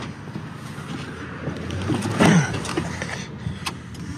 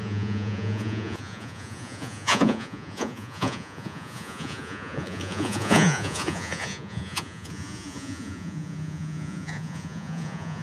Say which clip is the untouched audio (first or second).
first